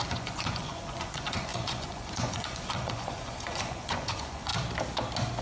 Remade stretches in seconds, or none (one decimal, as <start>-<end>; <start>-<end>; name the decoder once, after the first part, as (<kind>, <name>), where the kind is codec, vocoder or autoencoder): 0.0-4.5 (vocoder, Vocos)